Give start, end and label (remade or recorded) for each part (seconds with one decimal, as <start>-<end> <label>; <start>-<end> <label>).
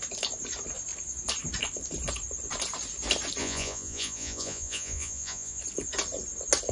0.0-3.4 recorded; 3.4-5.6 remade; 5.6-6.7 recorded